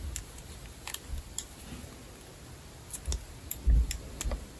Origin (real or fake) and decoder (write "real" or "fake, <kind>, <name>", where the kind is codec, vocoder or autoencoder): real